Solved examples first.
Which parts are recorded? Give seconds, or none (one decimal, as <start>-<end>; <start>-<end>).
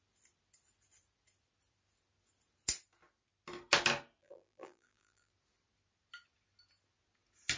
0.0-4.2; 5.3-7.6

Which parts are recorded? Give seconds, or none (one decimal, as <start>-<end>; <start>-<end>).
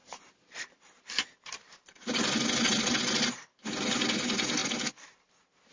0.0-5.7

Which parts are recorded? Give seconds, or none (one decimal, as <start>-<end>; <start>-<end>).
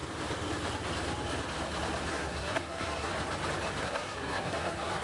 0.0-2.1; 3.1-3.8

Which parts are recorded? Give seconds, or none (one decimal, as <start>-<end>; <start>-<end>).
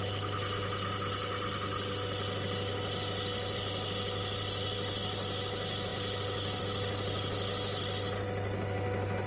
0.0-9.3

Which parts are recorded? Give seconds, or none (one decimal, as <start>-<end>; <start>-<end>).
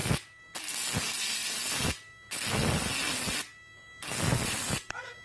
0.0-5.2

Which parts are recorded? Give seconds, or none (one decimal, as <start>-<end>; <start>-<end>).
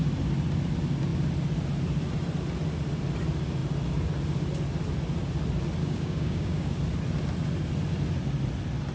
0.0-5.8; 6.8-8.9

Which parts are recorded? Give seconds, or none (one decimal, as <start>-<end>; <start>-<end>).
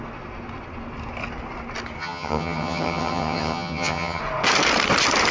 0.0-2.0; 4.2-5.3